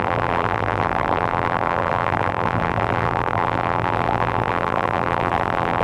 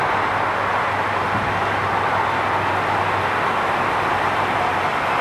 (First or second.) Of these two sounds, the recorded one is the second